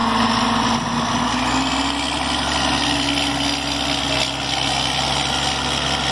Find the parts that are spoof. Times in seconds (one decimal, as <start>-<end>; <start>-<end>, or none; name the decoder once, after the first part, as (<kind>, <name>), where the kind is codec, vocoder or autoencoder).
none